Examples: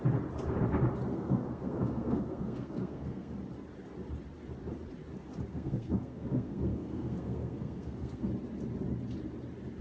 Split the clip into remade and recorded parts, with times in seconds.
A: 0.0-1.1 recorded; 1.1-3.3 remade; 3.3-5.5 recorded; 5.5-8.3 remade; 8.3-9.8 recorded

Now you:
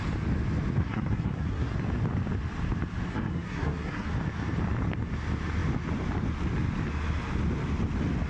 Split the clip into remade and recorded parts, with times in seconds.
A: 0.0-0.8 recorded; 0.8-1.7 remade; 1.7-3.1 recorded; 3.1-4.1 remade; 4.1-8.3 recorded

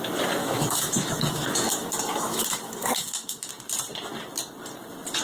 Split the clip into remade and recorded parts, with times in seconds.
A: 0.0-0.4 recorded; 0.4-3.5 remade; 3.5-5.2 recorded

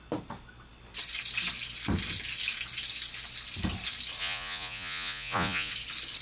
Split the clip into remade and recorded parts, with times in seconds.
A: 0.0-4.2 recorded; 4.2-5.7 remade; 5.7-6.2 recorded